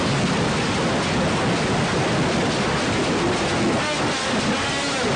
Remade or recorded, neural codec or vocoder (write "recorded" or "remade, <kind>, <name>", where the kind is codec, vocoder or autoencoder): recorded